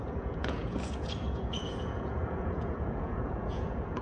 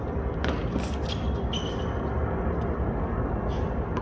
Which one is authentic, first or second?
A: second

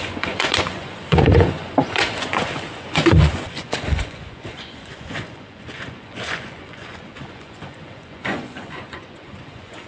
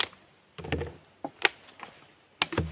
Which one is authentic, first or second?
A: second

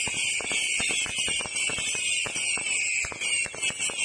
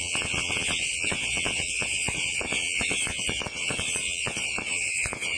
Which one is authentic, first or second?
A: first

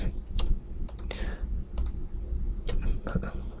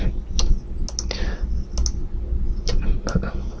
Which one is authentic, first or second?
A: second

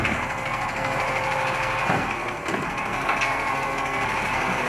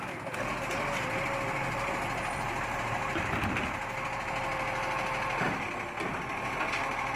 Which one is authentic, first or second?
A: second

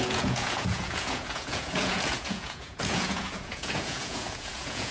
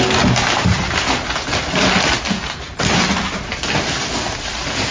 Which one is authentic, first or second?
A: second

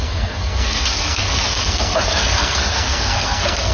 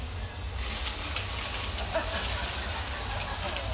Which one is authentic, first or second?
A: second